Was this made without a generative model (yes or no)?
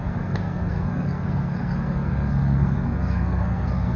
no